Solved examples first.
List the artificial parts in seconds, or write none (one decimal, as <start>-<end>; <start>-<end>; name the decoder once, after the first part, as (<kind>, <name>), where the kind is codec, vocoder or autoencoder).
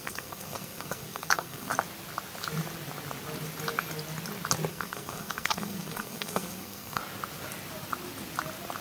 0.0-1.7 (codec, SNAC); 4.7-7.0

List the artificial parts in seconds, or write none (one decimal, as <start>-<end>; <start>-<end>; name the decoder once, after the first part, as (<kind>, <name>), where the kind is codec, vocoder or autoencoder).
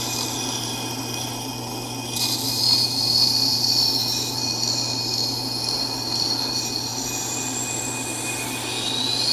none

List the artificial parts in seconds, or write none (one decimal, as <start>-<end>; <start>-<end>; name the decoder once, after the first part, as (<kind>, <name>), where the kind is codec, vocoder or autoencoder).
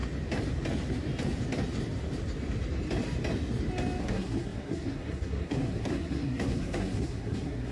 4.0-7.7 (codec, SNAC)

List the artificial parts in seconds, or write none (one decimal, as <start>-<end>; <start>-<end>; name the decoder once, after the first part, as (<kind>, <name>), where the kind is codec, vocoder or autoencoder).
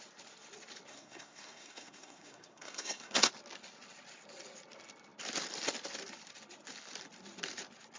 0.9-3.3 (codec, SNAC)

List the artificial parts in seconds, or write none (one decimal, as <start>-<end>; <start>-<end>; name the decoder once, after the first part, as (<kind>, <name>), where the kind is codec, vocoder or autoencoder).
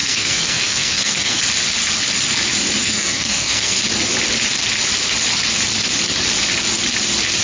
0.0-1.4 (codec, SNAC); 2.8-3.8